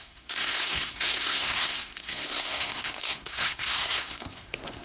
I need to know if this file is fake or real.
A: fake